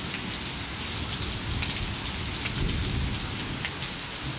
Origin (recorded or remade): recorded